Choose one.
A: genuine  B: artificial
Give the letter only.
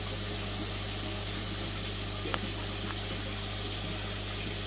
A